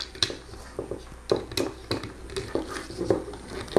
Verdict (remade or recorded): recorded